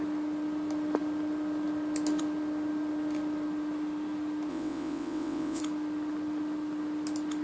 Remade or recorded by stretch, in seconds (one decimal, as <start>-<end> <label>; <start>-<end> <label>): 0.0-4.5 recorded; 4.5-5.6 remade; 5.6-7.4 recorded